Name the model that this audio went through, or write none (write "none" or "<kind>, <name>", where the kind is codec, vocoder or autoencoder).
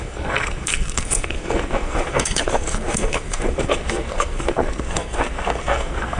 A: codec, SNAC